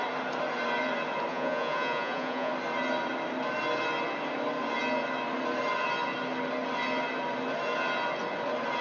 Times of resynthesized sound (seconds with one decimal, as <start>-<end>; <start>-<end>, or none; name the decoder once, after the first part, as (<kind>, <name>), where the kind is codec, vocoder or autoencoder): 1.3-2.5 (vocoder, Vocos)